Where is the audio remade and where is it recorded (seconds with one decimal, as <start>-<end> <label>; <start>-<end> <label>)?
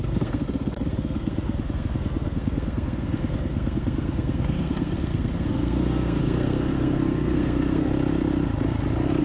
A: 0.0-7.9 remade; 7.9-9.2 recorded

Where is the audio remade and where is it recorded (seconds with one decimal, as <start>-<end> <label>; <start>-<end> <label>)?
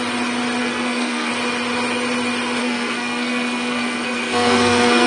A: 0.0-0.6 recorded; 0.6-1.3 remade; 1.3-2.6 recorded; 2.6-5.1 remade